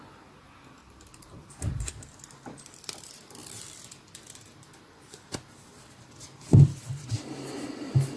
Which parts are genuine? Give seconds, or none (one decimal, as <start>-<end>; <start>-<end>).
0.0-0.8; 2.2-3.4; 7.2-8.2